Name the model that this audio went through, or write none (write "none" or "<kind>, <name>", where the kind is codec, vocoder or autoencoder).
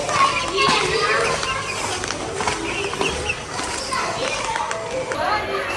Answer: none